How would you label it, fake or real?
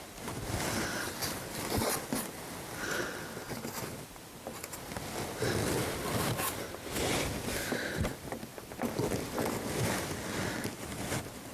real